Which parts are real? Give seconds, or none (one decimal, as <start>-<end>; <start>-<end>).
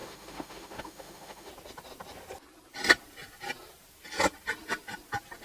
1.5-5.4